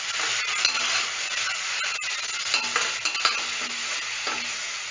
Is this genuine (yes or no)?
yes